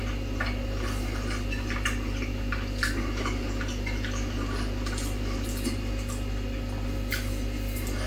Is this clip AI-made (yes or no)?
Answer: no